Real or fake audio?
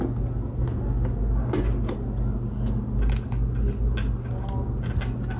real